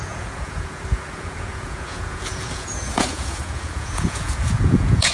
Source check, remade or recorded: remade